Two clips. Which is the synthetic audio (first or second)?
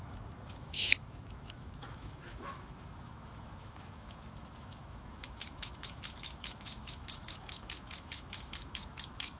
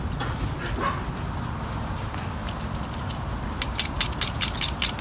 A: first